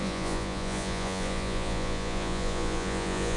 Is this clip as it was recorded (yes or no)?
no